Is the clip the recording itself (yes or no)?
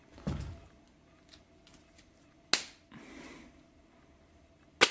yes